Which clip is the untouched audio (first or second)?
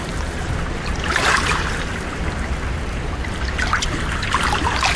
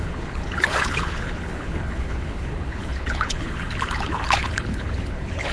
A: first